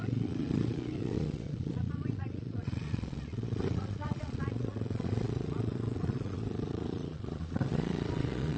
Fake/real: fake